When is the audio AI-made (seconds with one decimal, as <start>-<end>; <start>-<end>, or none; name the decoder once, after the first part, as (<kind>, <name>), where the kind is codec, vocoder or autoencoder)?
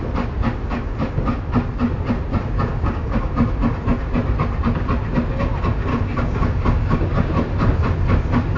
2.7-3.3 (codec, DAC); 5.9-7.3